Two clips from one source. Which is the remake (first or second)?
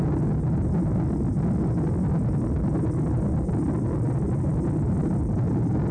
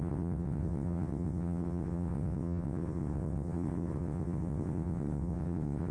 second